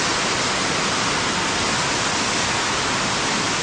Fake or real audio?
real